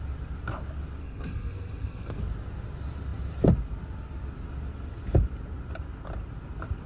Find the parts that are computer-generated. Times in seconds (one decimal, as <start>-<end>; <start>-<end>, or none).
1.0-2.2